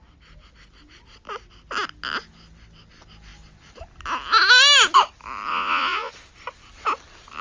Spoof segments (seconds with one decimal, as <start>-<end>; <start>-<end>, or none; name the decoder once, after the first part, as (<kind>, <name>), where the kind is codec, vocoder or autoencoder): 5.5-6.1 (vocoder, Vocos)